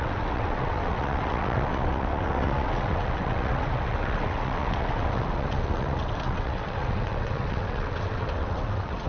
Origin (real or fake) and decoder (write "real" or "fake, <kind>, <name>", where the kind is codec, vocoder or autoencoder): fake, vocoder, WaveNeXt